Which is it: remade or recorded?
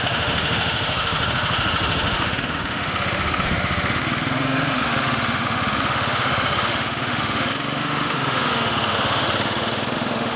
remade